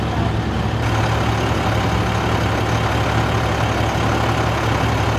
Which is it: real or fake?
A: real